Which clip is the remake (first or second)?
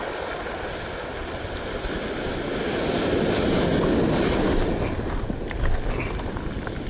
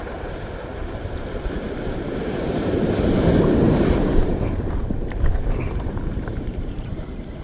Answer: second